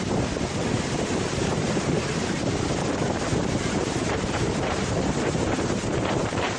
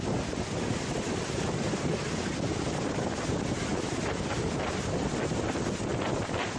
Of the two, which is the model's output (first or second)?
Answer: first